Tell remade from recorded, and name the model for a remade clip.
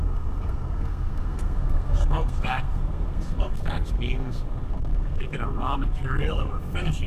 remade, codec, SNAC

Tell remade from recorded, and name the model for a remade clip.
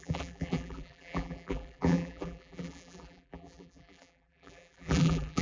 remade, vocoder, BigVGAN v2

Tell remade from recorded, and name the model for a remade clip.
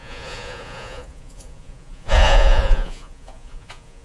remade, vocoder, Vocos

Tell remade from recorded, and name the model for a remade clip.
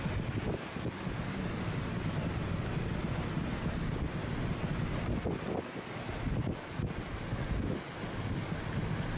recorded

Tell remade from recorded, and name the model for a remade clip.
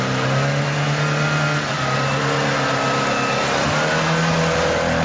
recorded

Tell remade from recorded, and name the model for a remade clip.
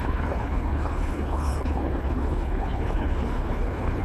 remade, codec, HILCodec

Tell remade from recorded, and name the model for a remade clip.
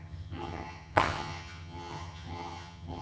remade, vocoder, HiFi-GAN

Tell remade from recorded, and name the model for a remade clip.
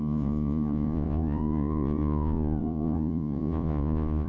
remade, vocoder, Vocos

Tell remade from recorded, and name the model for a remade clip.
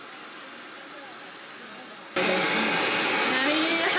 recorded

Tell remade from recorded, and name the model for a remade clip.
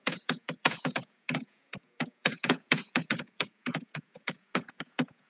remade, vocoder, Vocos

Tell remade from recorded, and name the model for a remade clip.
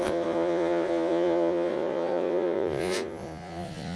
remade, vocoder, Vocos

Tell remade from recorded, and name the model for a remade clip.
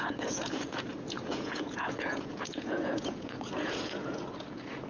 remade, vocoder, Vocos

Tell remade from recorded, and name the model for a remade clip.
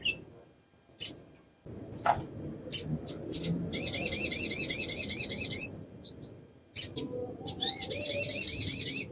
recorded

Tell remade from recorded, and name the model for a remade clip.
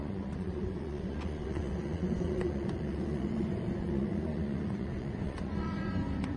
remade, vocoder, Vocos